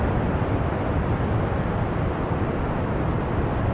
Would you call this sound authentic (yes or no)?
no